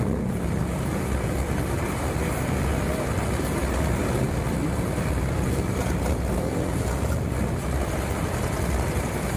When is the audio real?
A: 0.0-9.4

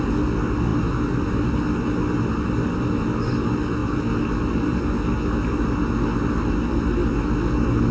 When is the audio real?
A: 0.0-7.9

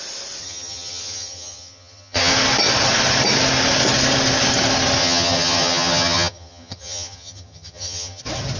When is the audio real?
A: 0.0-0.4; 2.3-5.0; 8.2-8.6

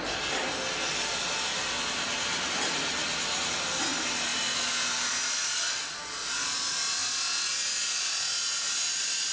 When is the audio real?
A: 0.0-9.3

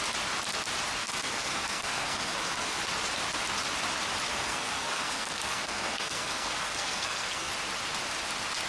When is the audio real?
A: 0.0-1.0; 2.8-4.3; 7.5-8.7